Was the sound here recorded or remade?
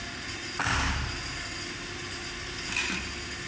recorded